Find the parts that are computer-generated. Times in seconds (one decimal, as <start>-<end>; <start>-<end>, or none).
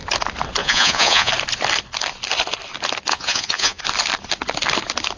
0.6-1.3; 3.1-3.8